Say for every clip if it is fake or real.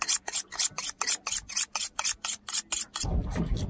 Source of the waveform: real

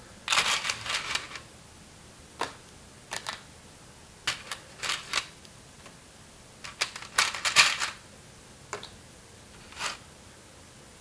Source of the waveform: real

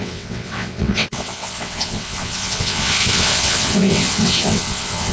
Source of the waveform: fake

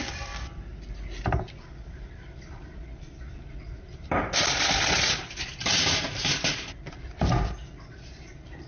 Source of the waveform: real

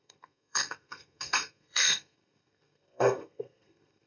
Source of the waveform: fake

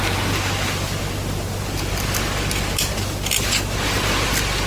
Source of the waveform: real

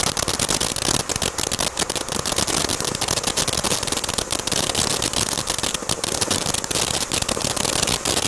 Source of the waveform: real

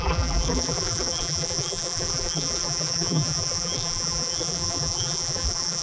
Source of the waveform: fake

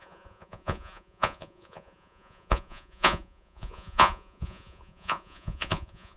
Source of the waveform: fake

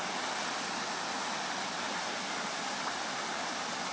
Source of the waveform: real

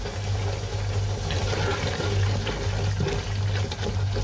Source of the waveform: real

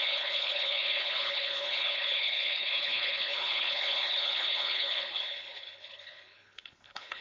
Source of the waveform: fake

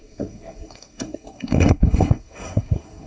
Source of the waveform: fake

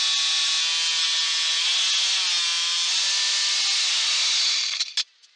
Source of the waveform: real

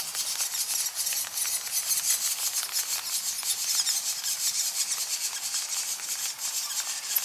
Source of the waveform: real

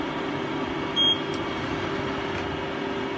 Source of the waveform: real